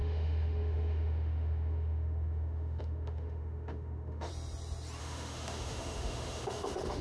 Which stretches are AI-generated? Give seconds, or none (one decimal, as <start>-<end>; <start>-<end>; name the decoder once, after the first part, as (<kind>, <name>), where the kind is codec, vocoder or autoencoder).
0.0-4.3 (autoencoder, DAC-VAE); 5.0-7.0